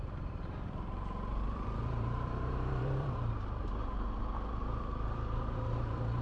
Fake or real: fake